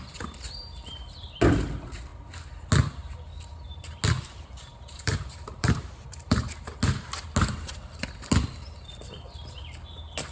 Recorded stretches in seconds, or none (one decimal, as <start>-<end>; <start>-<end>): 0.0-4.7; 6.7-10.3